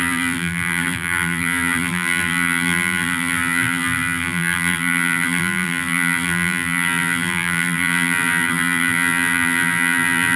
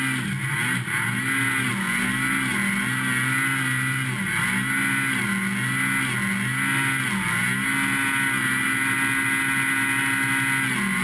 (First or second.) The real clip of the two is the second